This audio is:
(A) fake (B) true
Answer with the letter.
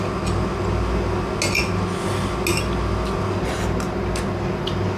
B